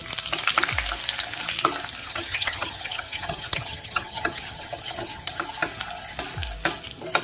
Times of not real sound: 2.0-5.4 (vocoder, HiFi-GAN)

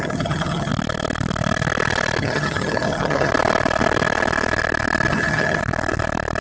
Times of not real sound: 0.0-0.7 (vocoder, HiFi-GAN); 2.2-3.3; 5.1-5.6